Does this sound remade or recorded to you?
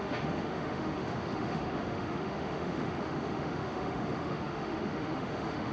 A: remade